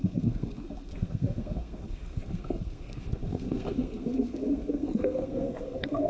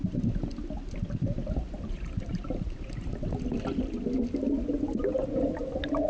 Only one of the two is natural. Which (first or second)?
second